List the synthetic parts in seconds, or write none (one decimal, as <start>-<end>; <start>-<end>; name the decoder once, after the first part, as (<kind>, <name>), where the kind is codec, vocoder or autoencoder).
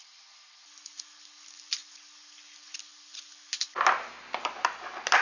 none